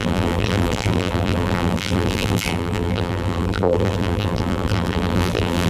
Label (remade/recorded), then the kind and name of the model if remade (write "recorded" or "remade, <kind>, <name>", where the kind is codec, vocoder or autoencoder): remade, vocoder, BigVGAN v2